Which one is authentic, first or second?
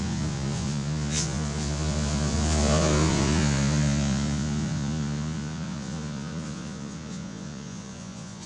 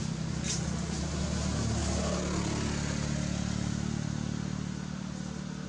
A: second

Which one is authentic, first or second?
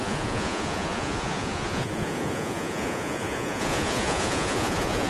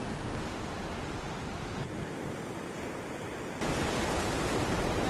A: second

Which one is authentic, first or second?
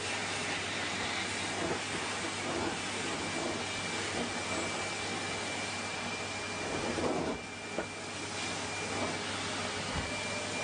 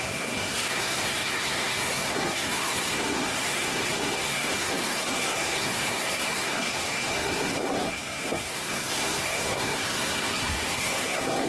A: first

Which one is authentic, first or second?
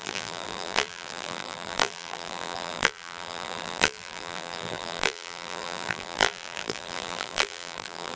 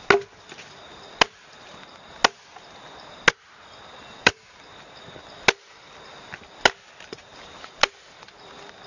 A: second